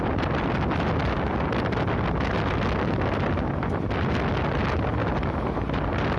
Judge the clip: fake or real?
real